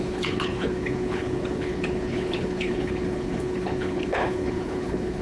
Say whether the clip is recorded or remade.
remade